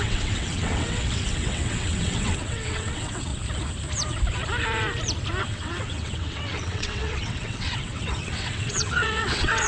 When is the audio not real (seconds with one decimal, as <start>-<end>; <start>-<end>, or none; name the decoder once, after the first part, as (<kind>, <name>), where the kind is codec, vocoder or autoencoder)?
0.0-3.3 (vocoder, WaveNeXt); 5.4-9.7